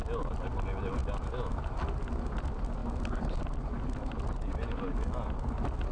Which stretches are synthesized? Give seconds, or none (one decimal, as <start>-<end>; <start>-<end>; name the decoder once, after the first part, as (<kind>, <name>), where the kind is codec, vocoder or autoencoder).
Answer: none